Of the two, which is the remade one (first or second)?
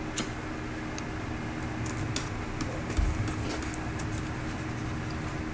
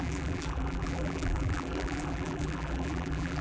second